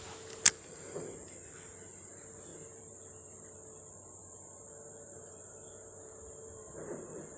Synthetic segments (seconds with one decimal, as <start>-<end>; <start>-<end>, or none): 2.5-3.8